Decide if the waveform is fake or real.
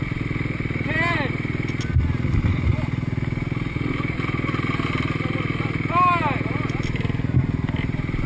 real